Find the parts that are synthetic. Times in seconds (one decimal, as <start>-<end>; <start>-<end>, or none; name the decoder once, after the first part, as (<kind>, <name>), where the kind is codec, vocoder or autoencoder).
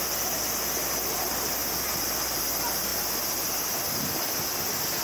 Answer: none